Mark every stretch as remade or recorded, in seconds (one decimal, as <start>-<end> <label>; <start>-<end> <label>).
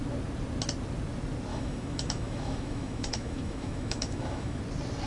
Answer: 0.0-1.5 recorded; 1.5-4.6 remade; 4.6-5.1 recorded